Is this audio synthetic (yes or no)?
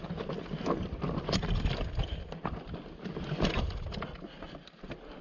no